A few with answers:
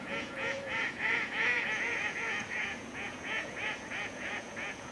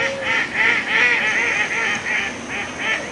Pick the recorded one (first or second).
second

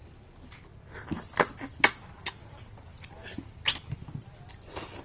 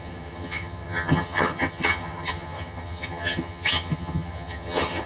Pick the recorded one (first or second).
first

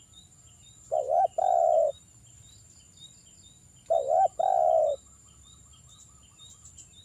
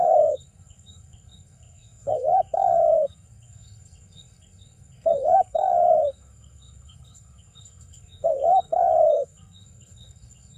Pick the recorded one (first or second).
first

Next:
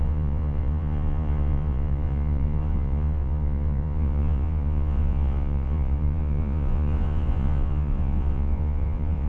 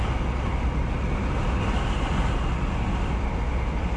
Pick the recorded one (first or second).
second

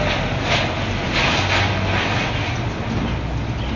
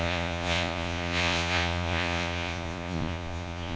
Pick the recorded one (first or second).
first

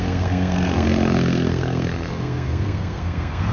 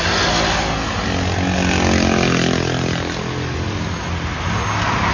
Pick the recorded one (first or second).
second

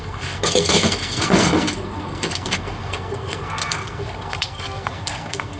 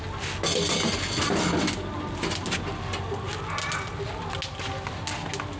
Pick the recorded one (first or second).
second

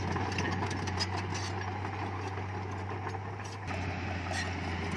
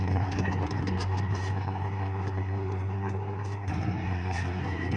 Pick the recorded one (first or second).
first